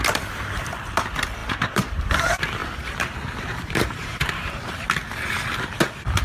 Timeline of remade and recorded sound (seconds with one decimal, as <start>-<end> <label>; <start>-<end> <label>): 0.0-1.4 recorded; 1.4-2.1 remade; 2.1-2.6 recorded; 2.6-4.7 remade; 4.7-6.2 recorded

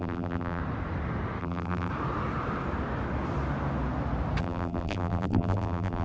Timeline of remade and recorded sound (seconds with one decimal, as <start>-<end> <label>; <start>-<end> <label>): 0.0-0.6 remade; 0.6-1.4 recorded; 1.4-1.9 remade; 1.9-4.4 recorded; 4.4-6.0 remade

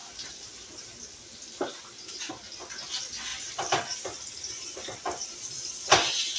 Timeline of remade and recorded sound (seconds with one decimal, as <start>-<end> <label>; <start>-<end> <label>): 0.0-3.3 recorded; 3.3-5.7 remade; 5.7-6.4 recorded